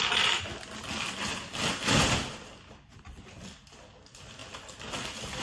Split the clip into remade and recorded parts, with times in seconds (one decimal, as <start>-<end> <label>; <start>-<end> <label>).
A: 0.0-5.4 recorded